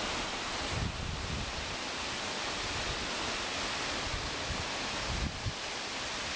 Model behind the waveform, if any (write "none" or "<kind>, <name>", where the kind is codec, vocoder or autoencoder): none